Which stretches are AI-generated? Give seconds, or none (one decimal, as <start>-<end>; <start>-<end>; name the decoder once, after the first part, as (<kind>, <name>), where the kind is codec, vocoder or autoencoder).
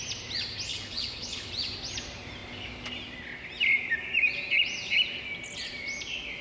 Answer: 0.7-1.5 (codec, HILCodec)